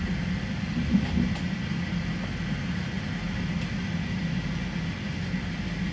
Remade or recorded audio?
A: recorded